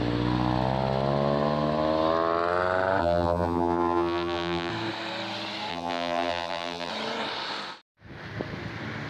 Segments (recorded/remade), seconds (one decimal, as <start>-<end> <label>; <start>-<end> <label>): 0.0-3.0 recorded; 3.0-4.7 remade; 4.7-5.7 recorded; 5.7-6.9 remade; 6.9-9.1 recorded